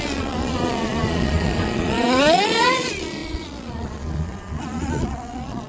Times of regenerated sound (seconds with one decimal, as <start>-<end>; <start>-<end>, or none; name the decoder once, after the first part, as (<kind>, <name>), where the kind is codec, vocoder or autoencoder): 0.0-5.7 (vocoder, Vocos)